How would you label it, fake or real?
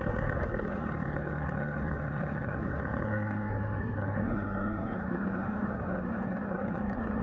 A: fake